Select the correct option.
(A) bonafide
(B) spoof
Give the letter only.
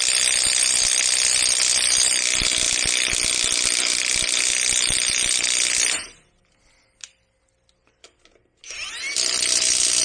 A